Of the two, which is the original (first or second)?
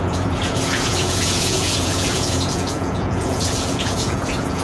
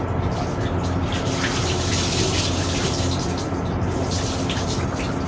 second